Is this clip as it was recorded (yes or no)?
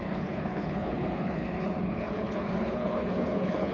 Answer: no